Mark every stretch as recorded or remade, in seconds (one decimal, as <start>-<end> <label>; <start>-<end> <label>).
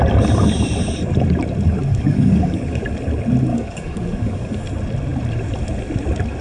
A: 0.0-1.9 recorded; 1.9-2.8 remade; 2.8-3.5 recorded; 3.5-4.6 remade; 4.6-6.4 recorded